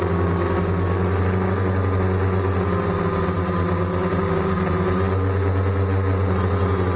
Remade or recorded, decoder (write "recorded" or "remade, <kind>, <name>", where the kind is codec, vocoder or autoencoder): recorded